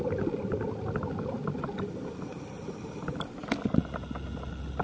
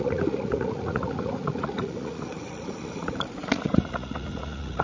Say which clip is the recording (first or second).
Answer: first